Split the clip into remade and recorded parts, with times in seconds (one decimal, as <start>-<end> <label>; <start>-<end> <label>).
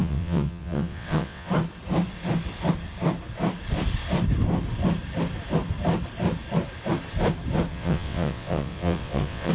0.0-1.5 remade; 1.5-7.7 recorded; 7.7-9.5 remade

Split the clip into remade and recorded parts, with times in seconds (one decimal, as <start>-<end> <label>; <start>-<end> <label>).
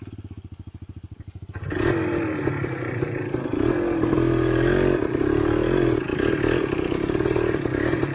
0.0-8.1 recorded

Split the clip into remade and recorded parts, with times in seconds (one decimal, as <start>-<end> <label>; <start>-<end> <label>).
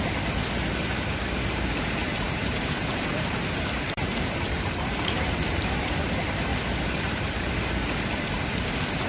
0.0-2.0 recorded; 2.0-6.0 remade; 6.0-6.5 recorded; 6.5-7.5 remade; 7.5-9.1 recorded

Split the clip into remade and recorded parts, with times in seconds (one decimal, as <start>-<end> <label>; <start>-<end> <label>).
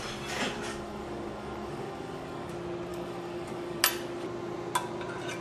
0.0-0.7 recorded; 0.7-2.5 remade; 2.5-2.9 recorded; 2.9-3.8 remade; 3.8-5.4 recorded